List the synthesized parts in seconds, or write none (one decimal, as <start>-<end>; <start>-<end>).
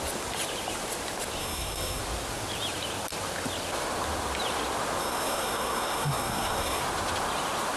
1.4-2.0; 5.0-6.8